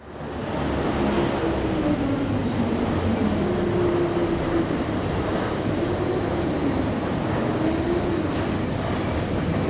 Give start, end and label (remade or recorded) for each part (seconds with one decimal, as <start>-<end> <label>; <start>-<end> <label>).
0.0-2.4 recorded; 2.4-2.9 remade; 2.9-4.2 recorded; 4.2-6.9 remade; 6.9-9.7 recorded